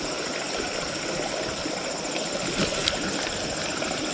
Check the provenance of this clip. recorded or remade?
recorded